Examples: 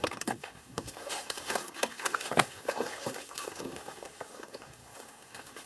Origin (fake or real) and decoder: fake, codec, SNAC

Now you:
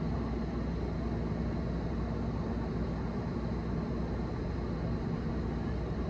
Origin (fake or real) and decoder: real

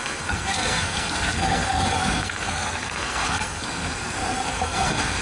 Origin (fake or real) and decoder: fake, codec, SNAC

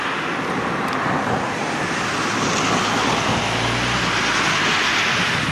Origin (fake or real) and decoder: real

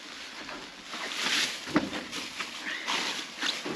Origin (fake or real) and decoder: real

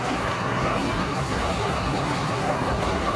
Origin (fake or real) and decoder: fake, codec, SNAC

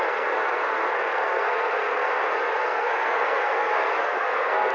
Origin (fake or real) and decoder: fake, codec, SNAC